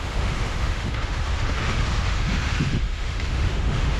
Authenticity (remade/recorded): remade